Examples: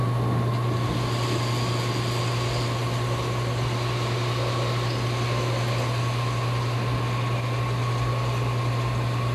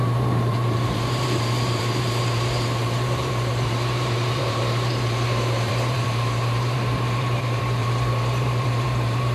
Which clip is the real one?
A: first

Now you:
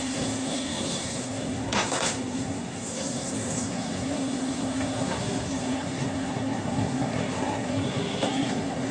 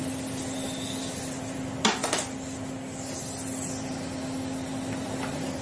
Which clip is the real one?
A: second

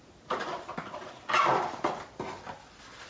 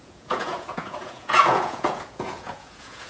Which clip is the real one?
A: first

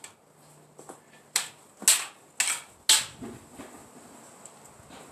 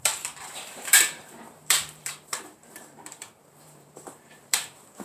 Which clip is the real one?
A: first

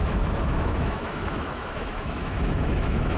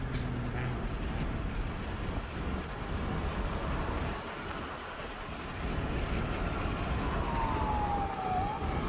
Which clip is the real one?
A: second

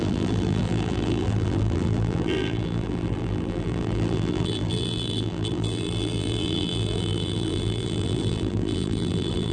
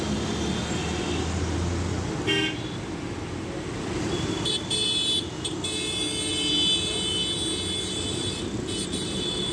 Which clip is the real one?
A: second